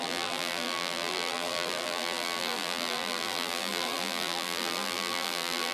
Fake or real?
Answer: fake